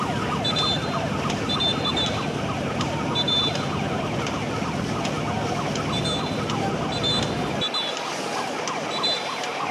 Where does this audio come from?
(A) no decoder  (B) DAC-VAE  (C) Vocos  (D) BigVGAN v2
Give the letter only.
A